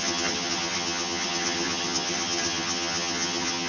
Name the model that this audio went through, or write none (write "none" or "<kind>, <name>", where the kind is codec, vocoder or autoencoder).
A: vocoder, HiFi-GAN